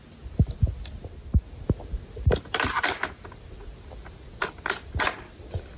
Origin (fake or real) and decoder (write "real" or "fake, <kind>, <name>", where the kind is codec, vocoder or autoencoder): real